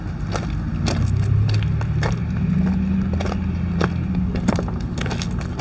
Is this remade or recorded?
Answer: recorded